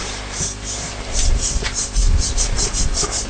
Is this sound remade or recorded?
remade